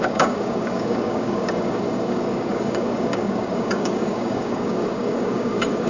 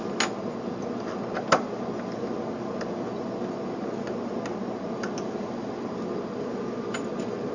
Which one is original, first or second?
second